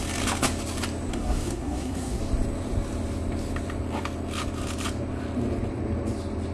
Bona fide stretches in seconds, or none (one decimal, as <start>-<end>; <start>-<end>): 0.0-1.1; 2.2-6.5